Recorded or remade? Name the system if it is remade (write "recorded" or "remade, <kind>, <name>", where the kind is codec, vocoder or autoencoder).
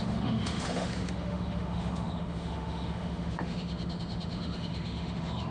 remade, autoencoder, DAC-VAE